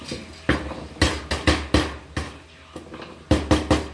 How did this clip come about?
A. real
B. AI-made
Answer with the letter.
A